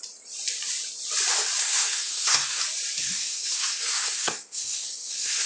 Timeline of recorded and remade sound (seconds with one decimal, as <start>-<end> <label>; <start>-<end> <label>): 0.0-1.6 recorded; 1.6-2.6 remade; 2.6-3.0 recorded; 3.0-5.5 remade